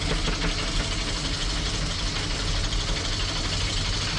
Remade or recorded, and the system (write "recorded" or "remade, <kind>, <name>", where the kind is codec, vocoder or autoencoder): recorded